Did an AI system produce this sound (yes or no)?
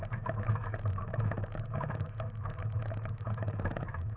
yes